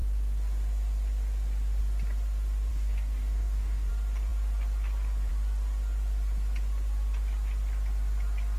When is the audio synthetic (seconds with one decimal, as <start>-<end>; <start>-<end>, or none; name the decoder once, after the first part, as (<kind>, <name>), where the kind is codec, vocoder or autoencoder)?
2.7-3.9 (codec, DAC)